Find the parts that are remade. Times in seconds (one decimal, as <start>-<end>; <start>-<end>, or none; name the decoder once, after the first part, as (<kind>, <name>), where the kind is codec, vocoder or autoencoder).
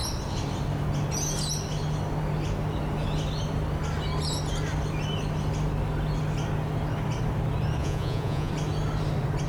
7.8-8.5 (vocoder, Vocos)